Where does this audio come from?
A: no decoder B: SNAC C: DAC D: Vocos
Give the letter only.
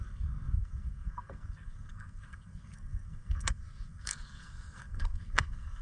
B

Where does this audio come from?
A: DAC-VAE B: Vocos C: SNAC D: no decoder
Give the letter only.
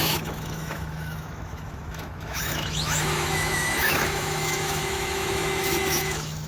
A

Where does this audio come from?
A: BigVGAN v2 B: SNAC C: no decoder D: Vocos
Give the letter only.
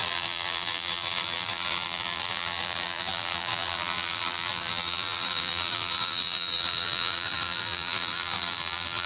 A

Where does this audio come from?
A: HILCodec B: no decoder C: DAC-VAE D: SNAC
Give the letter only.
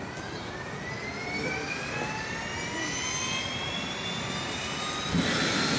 B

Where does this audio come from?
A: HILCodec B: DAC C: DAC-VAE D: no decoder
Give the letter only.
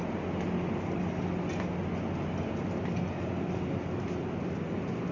D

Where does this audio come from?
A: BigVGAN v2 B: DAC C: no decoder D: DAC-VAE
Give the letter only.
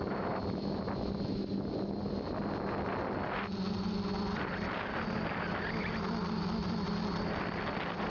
C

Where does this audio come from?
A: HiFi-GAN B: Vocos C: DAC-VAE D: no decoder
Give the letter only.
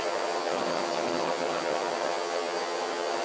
A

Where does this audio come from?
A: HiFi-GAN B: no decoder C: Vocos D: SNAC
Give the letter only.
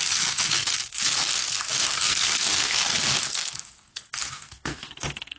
D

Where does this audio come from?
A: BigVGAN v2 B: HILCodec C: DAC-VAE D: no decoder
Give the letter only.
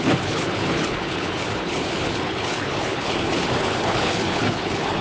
B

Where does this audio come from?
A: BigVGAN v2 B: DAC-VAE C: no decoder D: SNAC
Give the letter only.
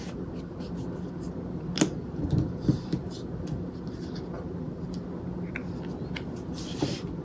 C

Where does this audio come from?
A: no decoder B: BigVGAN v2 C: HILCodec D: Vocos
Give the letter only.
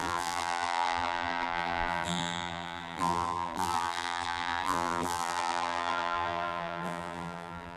B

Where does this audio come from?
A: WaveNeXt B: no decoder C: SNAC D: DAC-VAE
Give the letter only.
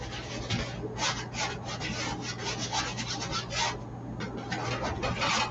B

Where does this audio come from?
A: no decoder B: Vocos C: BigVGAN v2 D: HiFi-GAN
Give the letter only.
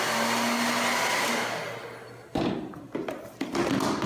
A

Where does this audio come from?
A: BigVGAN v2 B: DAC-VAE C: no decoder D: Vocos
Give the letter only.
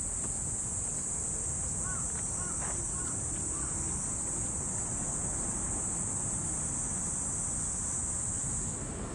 C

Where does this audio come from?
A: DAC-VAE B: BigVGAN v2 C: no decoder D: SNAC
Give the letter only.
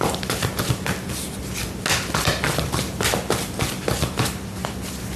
C